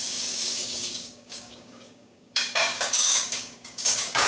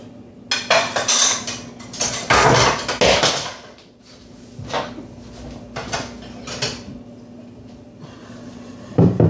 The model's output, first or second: first